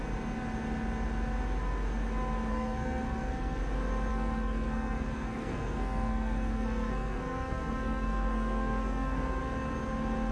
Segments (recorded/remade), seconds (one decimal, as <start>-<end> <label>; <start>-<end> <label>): 0.0-2.5 recorded; 2.5-3.6 remade; 3.6-4.1 recorded; 4.1-9.4 remade; 9.4-10.3 recorded